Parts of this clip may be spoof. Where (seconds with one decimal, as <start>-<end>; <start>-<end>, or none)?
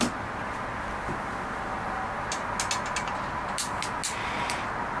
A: none